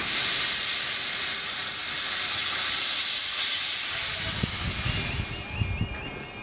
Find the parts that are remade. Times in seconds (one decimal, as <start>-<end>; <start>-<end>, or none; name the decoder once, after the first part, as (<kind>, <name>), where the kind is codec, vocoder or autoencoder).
none